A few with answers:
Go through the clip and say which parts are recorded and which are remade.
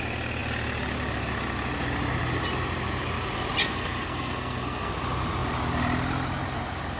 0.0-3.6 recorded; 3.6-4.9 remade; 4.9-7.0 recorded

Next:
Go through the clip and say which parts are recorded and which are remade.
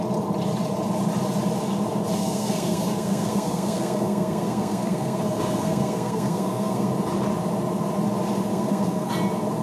0.0-2.1 recorded; 2.1-6.9 remade; 6.9-8.5 recorded; 8.5-9.1 remade; 9.1-9.6 recorded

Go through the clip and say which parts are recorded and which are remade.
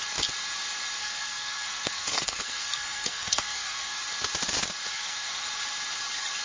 0.0-1.0 recorded; 1.0-4.0 remade; 4.0-4.9 recorded; 4.9-5.4 remade; 5.4-6.4 recorded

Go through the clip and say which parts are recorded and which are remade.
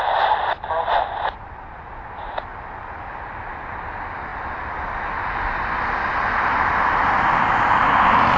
0.0-8.4 recorded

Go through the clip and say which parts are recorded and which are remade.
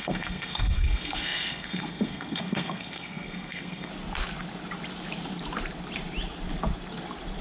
0.0-3.9 remade; 3.9-7.4 recorded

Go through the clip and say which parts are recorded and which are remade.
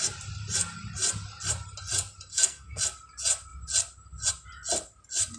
0.0-2.3 recorded; 2.3-2.8 remade; 2.8-5.4 recorded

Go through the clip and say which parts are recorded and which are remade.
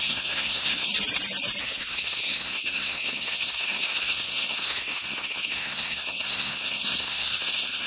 0.0-0.9 remade; 0.9-1.6 recorded; 1.6-7.9 remade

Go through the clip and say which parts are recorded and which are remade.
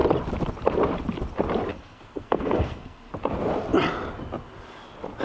0.0-1.7 recorded; 1.7-3.1 remade; 3.1-5.2 recorded